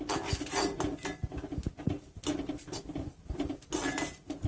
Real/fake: real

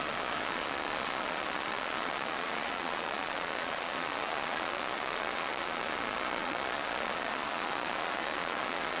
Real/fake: fake